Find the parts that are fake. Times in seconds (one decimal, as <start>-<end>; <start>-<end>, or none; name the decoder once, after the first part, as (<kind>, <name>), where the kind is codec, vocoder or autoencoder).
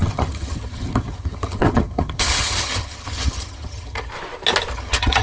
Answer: 0.0-4.1 (vocoder, HiFi-GAN); 4.7-5.2